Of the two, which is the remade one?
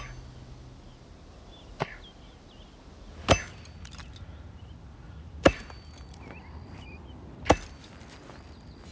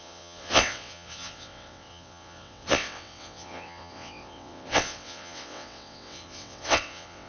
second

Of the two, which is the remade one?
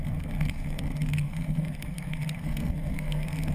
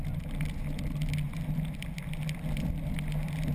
first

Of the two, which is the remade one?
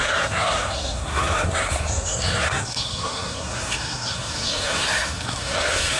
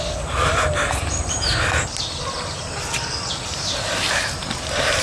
first